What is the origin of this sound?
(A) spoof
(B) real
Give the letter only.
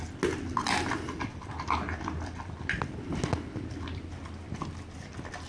B